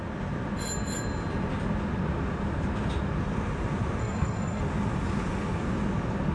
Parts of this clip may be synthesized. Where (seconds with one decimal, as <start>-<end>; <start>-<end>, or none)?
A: 4.0-4.6